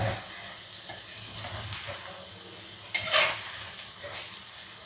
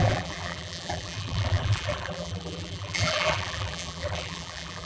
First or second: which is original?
first